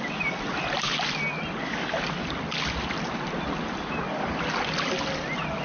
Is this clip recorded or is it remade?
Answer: recorded